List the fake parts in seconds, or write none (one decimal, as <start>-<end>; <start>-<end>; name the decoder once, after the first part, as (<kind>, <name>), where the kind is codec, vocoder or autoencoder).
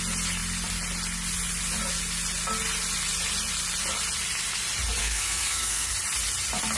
5.0-5.9 (codec, SNAC)